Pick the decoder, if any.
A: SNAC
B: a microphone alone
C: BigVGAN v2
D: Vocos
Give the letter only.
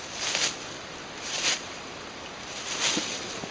C